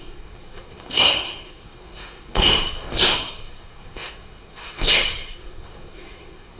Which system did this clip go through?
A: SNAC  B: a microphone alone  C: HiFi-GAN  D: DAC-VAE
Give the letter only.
A